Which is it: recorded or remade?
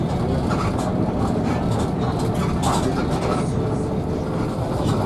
recorded